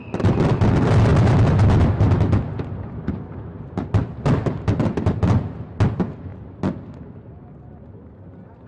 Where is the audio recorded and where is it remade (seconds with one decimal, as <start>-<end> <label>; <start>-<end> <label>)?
0.0-8.7 recorded